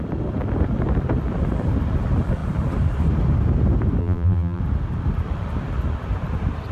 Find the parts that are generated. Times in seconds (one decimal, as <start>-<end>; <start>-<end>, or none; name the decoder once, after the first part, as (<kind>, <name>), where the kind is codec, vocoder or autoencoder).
4.0-4.6 (vocoder, BigVGAN v2)